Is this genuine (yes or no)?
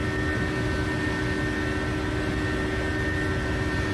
yes